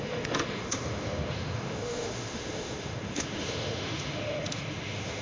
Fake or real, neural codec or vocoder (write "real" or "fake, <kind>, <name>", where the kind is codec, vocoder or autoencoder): fake, autoencoder, DAC-VAE